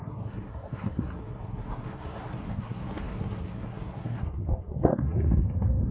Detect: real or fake fake